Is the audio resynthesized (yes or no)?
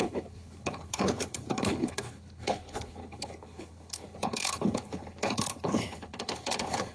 yes